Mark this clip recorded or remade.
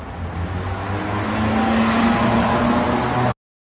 recorded